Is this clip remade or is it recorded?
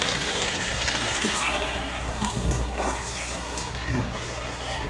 remade